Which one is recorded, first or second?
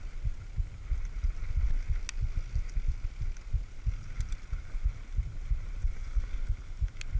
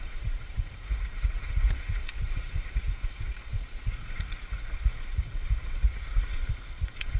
first